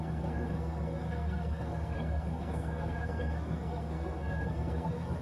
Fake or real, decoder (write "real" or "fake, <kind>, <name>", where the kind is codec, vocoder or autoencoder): fake, codec, SNAC